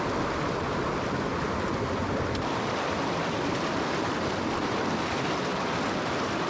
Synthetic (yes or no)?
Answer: no